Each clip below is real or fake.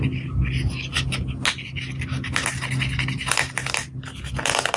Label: real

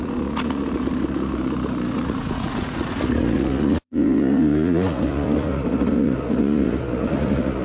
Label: fake